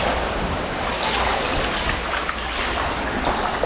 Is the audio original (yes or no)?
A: yes